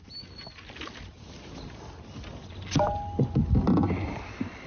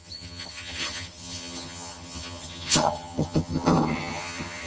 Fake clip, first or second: second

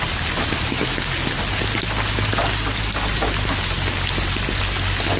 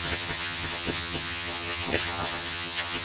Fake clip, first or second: second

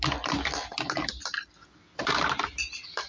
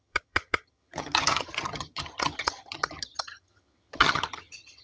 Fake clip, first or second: second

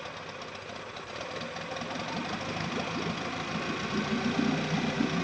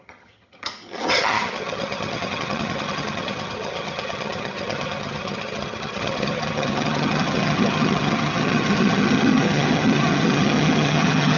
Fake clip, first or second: second